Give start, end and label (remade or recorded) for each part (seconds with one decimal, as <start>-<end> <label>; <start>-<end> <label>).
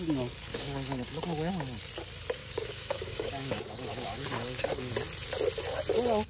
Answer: 0.0-0.5 recorded; 0.5-1.5 remade; 1.5-2.4 recorded; 2.4-4.9 remade; 4.9-6.3 recorded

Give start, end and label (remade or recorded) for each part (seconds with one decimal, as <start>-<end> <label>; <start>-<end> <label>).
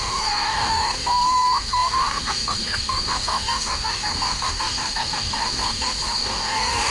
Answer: 0.0-6.9 remade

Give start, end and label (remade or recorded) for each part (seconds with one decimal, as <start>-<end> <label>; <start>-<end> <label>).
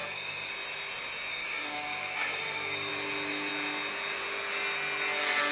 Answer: 0.0-0.5 remade; 0.5-1.3 recorded; 1.3-2.9 remade; 2.9-5.5 recorded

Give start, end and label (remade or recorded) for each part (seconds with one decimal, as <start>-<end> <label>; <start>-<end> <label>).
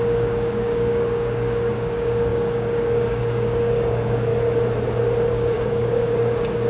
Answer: 0.0-4.3 remade; 4.3-5.3 recorded; 5.3-6.7 remade